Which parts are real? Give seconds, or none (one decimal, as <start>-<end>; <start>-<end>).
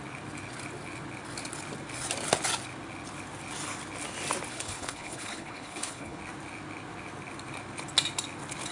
0.0-4.5; 6.2-8.7